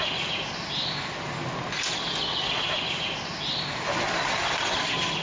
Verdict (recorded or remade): recorded